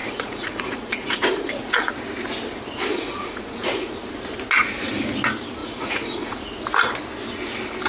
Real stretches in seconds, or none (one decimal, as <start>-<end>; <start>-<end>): 1.9-2.9; 4.1-5.6; 6.4-7.9